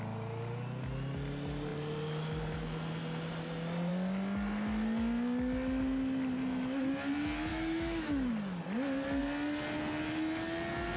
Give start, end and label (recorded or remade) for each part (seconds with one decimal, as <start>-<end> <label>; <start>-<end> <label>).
0.0-7.5 recorded; 7.5-8.3 remade; 8.3-11.0 recorded